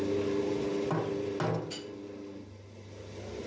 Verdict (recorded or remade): recorded